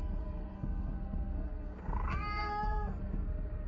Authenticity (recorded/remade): remade